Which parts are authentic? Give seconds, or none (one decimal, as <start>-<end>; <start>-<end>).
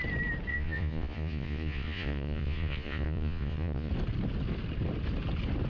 0.0-0.5; 3.9-5.7